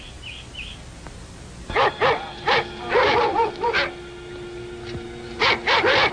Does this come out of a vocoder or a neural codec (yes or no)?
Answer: no